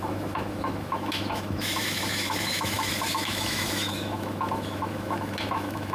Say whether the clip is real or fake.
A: fake